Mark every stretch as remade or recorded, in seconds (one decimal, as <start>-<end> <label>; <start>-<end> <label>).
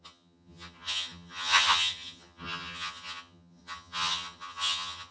0.0-5.1 remade